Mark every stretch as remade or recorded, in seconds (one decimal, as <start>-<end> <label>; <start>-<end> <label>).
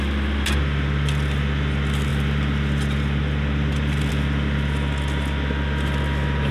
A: 0.0-6.5 recorded